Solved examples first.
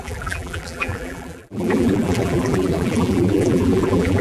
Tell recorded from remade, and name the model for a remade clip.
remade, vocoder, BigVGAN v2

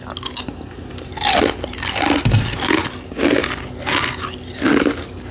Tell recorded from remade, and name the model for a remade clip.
recorded